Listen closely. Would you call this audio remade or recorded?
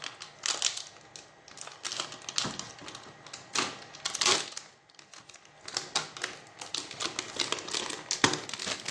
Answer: recorded